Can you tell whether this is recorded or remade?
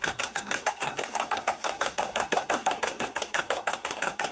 remade